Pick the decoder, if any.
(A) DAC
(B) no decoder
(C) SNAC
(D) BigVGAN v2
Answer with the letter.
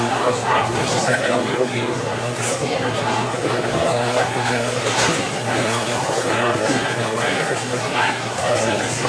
C